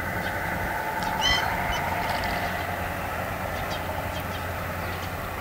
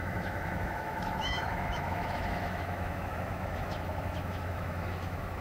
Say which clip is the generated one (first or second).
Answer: second